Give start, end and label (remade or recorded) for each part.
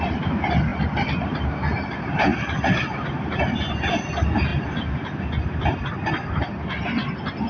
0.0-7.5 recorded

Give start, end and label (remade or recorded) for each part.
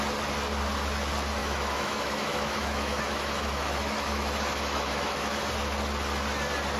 0.0-1.4 recorded; 1.4-5.5 remade; 5.5-6.8 recorded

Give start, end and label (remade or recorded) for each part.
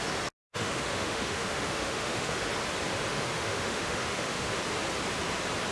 0.0-0.5 recorded; 0.5-2.4 remade; 2.4-3.1 recorded; 3.1-4.6 remade; 4.6-5.7 recorded